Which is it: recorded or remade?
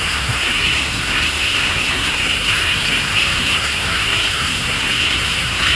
remade